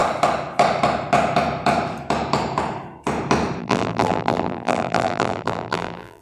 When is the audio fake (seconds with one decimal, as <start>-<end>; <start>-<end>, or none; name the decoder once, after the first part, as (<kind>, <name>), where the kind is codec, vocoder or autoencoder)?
3.6-6.2 (vocoder, BigVGAN v2)